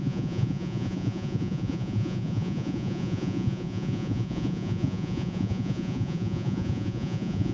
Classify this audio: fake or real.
fake